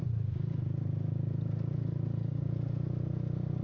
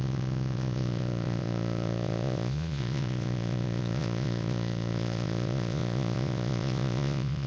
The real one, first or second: first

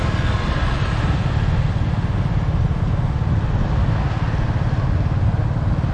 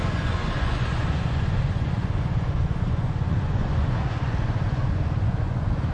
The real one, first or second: first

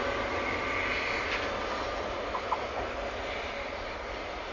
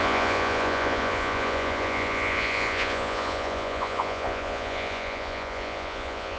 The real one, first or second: first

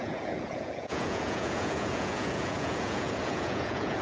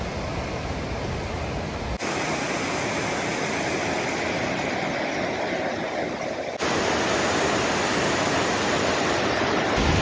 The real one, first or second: second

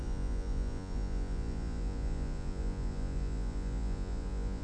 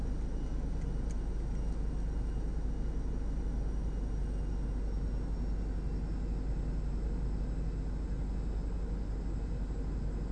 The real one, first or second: second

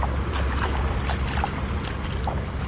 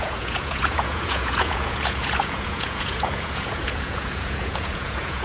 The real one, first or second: first